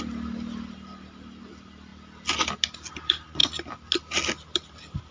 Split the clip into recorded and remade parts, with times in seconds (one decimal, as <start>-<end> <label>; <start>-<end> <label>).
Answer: 0.0-1.9 remade; 1.9-2.9 recorded; 2.9-3.4 remade; 3.4-5.1 recorded